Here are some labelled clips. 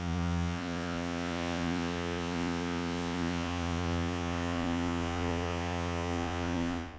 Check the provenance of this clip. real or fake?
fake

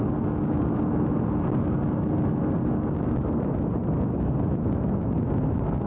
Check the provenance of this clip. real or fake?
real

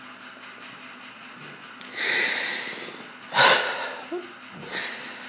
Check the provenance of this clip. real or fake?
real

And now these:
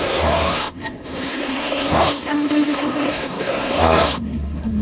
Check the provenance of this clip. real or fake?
fake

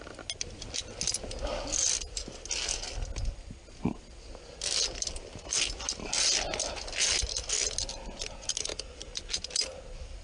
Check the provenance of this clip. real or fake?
real